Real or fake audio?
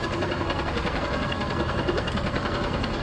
fake